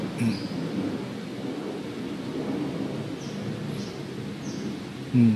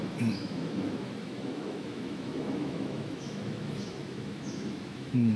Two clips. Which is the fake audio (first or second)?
second